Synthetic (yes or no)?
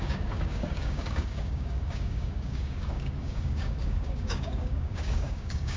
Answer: yes